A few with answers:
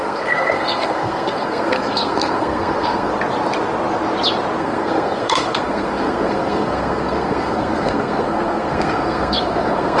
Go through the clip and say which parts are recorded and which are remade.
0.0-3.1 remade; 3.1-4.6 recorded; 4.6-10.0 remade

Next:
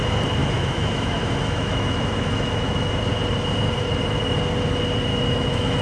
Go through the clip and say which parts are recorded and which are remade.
0.0-0.4 recorded; 0.4-2.9 remade; 2.9-5.1 recorded; 5.1-5.8 remade

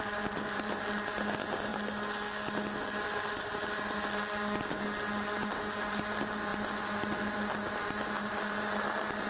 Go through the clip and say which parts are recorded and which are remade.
0.0-9.3 recorded

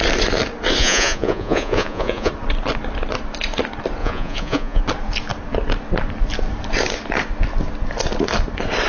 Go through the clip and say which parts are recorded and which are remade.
0.0-0.8 recorded; 0.8-2.3 remade; 2.3-4.0 recorded; 4.0-4.8 remade; 4.8-8.9 recorded

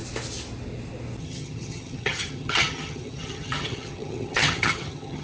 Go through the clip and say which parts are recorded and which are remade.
0.0-1.2 recorded; 1.2-5.2 remade

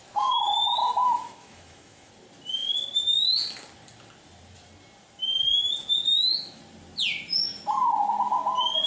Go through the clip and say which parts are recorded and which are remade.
0.0-0.8 recorded; 0.8-2.1 remade; 2.1-6.1 recorded; 6.1-6.6 remade; 6.6-8.9 recorded

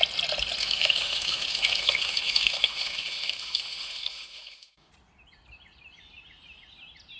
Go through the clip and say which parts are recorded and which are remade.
0.0-0.6 recorded; 0.6-4.9 remade; 4.9-7.2 recorded

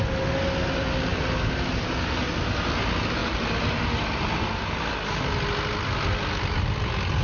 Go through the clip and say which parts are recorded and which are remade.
0.0-7.2 recorded